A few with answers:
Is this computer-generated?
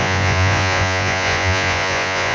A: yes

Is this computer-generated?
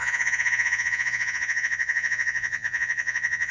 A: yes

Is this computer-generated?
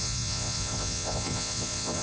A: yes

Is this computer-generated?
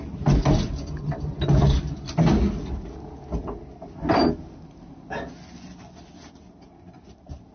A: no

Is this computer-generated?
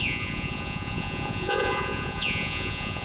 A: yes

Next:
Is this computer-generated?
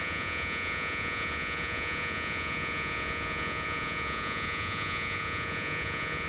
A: yes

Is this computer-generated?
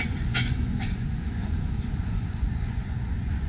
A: yes